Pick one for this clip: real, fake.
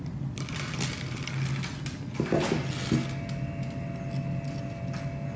real